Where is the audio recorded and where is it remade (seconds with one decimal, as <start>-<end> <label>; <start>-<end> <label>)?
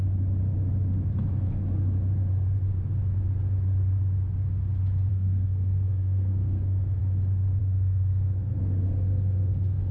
0.0-5.1 recorded; 5.1-7.0 remade; 7.0-7.6 recorded; 7.6-9.9 remade